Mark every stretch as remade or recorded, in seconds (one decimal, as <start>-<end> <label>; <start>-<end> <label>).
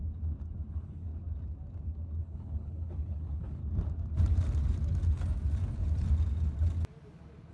0.0-0.7 recorded; 0.7-1.1 remade; 1.1-2.2 recorded; 2.2-3.6 remade; 3.6-7.5 recorded